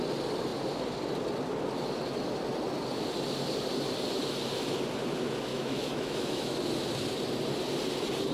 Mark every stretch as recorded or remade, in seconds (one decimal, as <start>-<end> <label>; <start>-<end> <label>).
0.0-5.5 recorded; 5.5-6.6 remade; 6.6-8.3 recorded